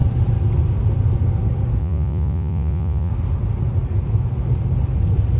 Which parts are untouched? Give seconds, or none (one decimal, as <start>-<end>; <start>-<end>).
0.0-1.8; 3.1-5.4